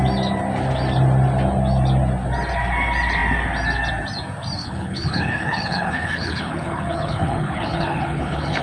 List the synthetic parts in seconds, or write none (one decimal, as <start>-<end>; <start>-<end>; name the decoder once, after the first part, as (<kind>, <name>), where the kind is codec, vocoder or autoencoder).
4.6-8.6 (codec, HILCodec)